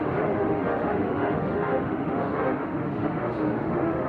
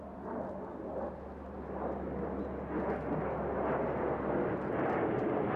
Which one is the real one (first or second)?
second